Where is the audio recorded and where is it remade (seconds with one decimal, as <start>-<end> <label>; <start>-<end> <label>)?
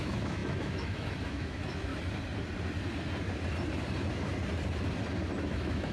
0.0-1.9 remade; 1.9-5.4 recorded; 5.4-5.9 remade